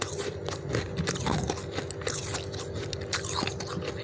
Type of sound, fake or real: real